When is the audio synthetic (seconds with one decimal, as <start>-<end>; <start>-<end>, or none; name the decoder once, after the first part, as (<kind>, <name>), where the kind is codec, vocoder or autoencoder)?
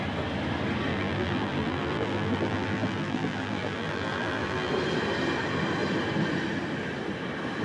0.9-4.7 (vocoder, BigVGAN v2)